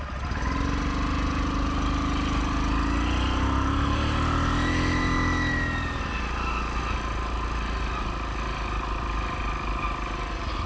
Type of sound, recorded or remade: recorded